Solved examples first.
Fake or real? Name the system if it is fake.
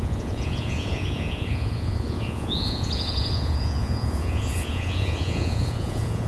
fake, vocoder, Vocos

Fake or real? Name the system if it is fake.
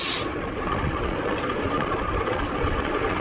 fake, vocoder, Vocos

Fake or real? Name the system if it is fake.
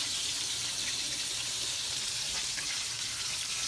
real